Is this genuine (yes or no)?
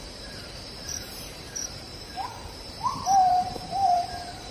no